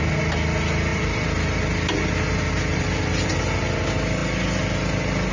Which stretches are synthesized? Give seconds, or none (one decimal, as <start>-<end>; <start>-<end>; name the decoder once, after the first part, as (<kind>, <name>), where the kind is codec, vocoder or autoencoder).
0.9-1.6 (vocoder, BigVGAN v2); 2.7-3.3